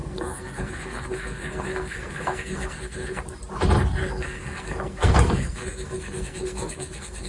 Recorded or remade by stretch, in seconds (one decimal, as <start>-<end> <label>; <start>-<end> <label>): 0.0-3.2 remade; 3.2-4.0 recorded; 4.0-7.3 remade